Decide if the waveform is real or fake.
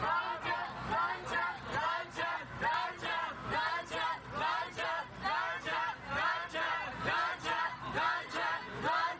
real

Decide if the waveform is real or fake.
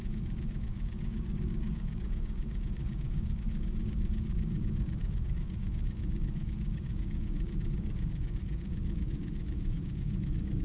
fake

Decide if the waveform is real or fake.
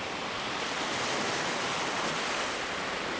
real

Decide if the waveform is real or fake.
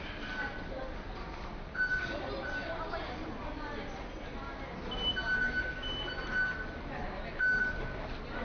real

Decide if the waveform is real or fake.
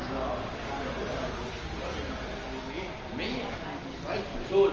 real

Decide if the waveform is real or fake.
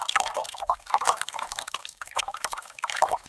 fake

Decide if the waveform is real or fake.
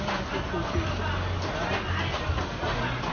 real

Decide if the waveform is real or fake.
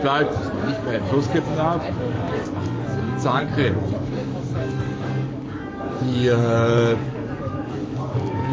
fake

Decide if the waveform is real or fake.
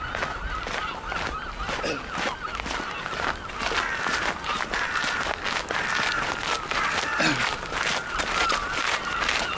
real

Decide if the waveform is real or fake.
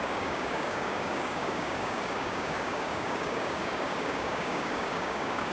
fake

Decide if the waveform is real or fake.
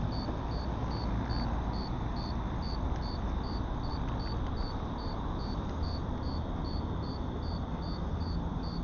real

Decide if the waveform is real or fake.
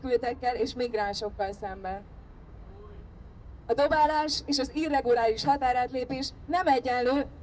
fake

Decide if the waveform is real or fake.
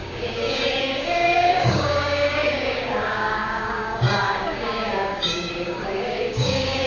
fake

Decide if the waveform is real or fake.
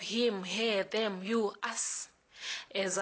real